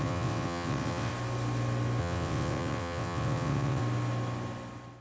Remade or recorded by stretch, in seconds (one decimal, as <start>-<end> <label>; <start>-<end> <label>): 0.0-1.1 remade; 1.1-2.0 recorded; 2.0-3.8 remade; 3.8-5.0 recorded